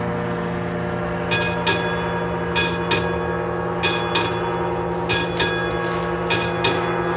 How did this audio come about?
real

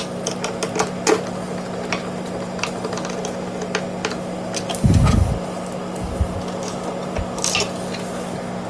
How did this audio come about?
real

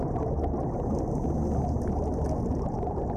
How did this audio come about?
real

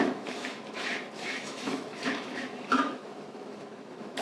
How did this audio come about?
fake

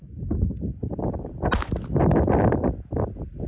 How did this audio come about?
real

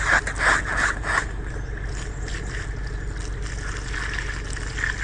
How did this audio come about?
real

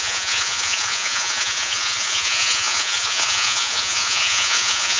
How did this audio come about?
fake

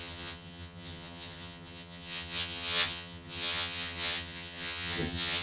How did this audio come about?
fake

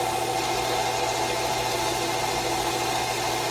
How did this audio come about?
real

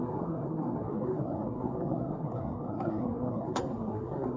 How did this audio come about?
fake